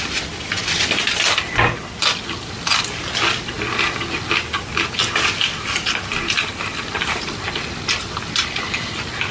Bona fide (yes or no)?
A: yes